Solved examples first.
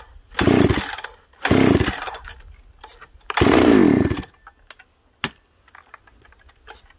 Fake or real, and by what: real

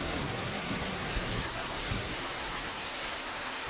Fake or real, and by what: fake, codec, SNAC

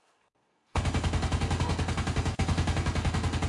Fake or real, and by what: fake, codec, SNAC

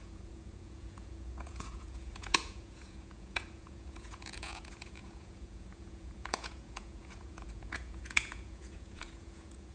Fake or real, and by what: fake, vocoder, Vocos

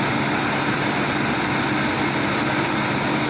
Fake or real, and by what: real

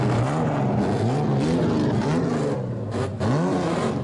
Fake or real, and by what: real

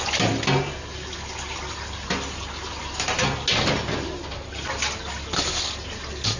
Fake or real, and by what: real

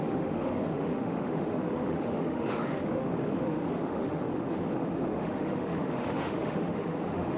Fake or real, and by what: fake, autoencoder, DAC-VAE